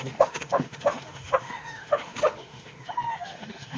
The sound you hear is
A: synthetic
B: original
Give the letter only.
A